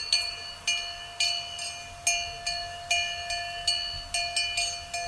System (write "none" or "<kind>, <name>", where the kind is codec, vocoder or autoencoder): none